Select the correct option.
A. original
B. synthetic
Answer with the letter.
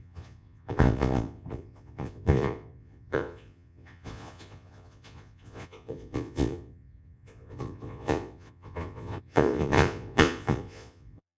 B